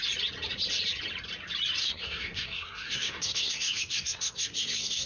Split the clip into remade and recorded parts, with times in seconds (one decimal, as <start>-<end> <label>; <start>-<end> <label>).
0.0-1.8 recorded; 1.8-5.1 remade